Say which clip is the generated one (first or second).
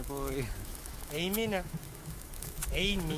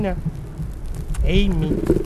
first